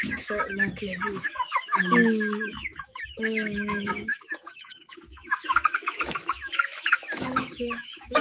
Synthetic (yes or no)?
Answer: yes